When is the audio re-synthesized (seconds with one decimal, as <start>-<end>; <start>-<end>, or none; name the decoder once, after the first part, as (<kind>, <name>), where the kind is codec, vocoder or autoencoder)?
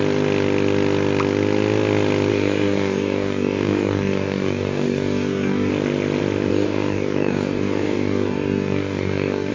2.3-5.7 (codec, DAC); 6.5-9.5